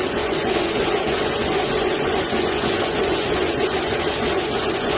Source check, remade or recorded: remade